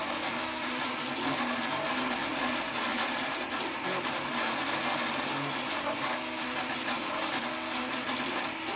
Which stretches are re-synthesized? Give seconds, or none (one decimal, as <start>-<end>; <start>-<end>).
2.9-4.6